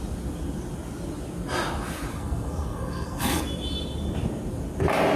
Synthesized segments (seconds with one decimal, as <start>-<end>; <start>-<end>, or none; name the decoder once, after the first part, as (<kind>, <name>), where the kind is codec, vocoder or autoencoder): 2.1-3.4 (codec, SNAC)